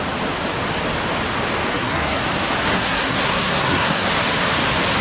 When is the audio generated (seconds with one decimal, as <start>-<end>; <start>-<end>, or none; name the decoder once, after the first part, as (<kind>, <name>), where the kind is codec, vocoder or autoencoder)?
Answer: 1.7-2.2 (codec, SNAC); 2.6-4.1